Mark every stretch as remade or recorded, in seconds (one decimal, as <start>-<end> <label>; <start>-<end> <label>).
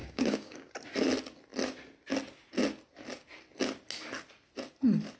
0.0-0.7 remade; 0.7-5.2 recorded